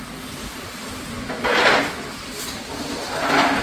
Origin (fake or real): real